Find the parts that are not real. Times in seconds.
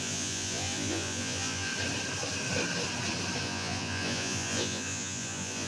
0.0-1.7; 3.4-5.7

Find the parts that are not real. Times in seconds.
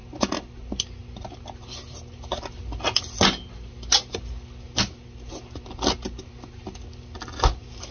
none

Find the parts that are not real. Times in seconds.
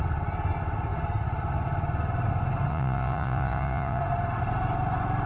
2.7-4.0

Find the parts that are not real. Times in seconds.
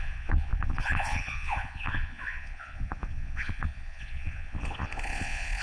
0.0-5.6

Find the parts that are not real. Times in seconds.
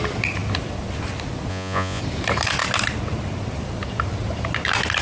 1.5-2.0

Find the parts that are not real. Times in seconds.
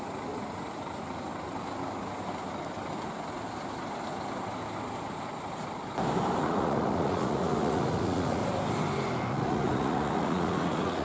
0.0-1.3; 6.4-8.4; 9.3-11.0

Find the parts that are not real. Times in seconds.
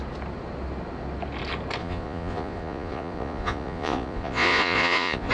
1.8-5.3